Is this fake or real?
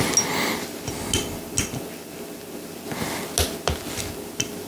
real